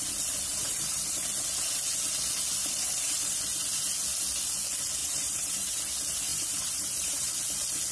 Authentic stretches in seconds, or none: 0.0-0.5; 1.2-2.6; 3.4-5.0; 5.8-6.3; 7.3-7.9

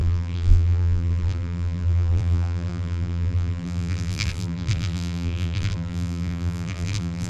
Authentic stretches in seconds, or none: none

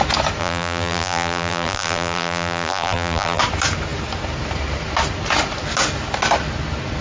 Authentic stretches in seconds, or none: 0.0-0.4; 3.4-7.0

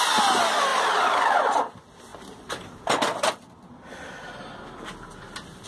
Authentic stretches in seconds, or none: 0.0-5.7

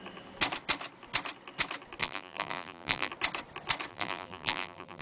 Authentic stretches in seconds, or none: 0.0-2.0; 3.1-3.9

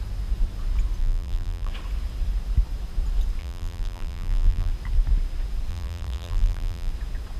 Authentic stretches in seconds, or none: 0.0-1.0; 1.7-3.4; 4.7-5.7; 6.9-7.4

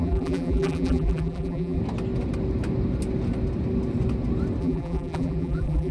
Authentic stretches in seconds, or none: 1.8-4.6

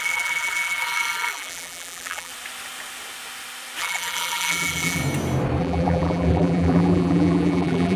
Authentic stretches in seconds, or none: 2.3-3.8; 5.0-5.6